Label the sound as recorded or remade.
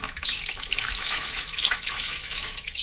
remade